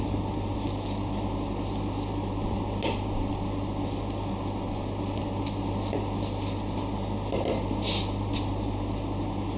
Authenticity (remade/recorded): recorded